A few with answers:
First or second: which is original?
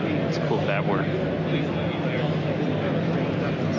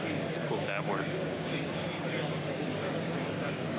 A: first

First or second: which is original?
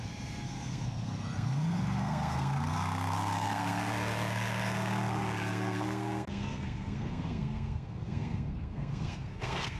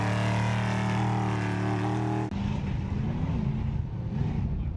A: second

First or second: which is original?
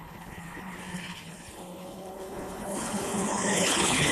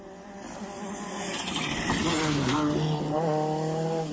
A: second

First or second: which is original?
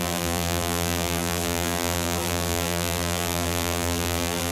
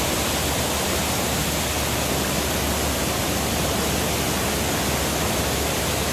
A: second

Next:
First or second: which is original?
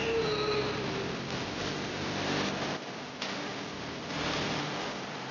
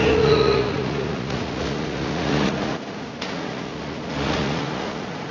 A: first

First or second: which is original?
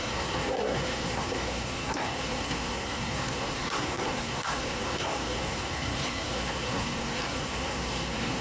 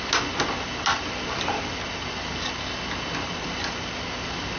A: second